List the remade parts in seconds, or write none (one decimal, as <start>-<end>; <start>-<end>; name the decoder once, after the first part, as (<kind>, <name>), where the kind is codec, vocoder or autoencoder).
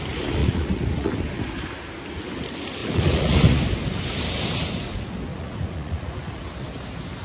0.4-1.1 (vocoder, Vocos); 2.8-3.6; 5.3-6.4